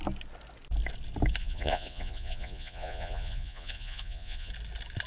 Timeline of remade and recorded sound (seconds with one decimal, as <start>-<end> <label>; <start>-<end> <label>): 0.0-1.4 recorded; 1.4-4.5 remade; 4.5-5.1 recorded